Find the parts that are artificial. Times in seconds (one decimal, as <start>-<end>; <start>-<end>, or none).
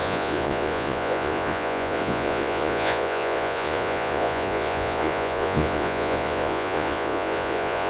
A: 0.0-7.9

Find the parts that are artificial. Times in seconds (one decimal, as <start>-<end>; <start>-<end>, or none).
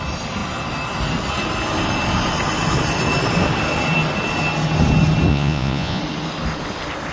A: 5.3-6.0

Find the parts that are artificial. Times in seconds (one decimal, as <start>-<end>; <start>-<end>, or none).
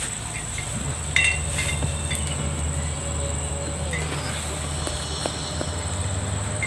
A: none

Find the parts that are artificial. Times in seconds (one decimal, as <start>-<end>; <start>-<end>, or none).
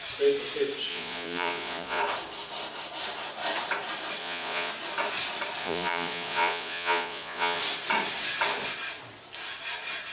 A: 0.9-2.0; 4.2-4.7; 5.6-7.6